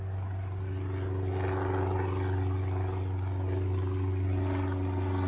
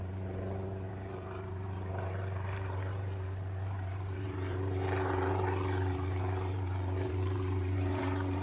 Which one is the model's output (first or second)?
second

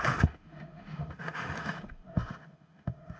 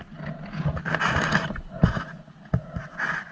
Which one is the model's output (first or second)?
first